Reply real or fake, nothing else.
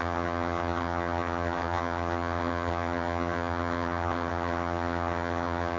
fake